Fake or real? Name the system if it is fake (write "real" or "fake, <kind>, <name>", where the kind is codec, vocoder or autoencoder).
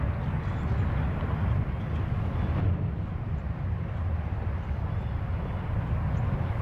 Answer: real